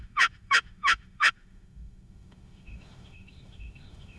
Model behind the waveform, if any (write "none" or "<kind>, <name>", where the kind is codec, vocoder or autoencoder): autoencoder, DAC-VAE